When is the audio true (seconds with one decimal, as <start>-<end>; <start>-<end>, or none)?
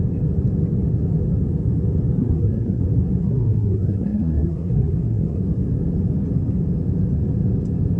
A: 0.0-2.2; 2.8-3.2; 5.4-8.0